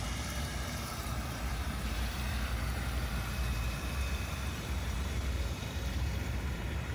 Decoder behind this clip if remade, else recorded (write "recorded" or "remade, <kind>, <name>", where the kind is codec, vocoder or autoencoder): remade, vocoder, BigVGAN v2